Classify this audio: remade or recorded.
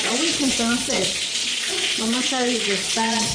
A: remade